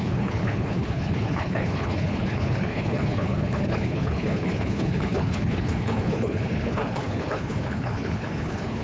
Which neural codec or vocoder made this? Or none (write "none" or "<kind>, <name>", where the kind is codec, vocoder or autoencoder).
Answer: codec, HILCodec